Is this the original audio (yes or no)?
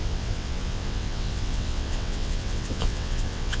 no